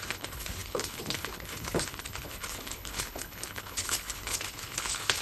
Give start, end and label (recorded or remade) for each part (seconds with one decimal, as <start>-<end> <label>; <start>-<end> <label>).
0.0-5.2 remade